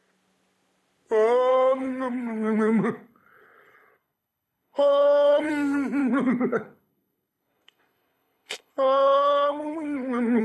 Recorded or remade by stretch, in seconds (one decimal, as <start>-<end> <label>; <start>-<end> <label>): 0.0-1.5 recorded; 1.5-5.5 remade; 5.5-6.0 recorded; 6.0-10.4 remade